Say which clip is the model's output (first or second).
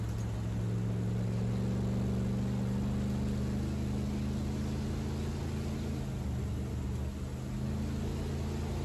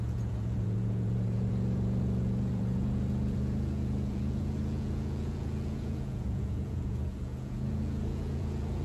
second